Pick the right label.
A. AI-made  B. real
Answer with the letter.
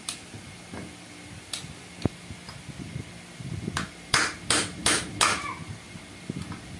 B